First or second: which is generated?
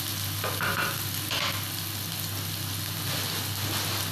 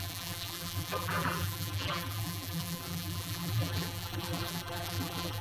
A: second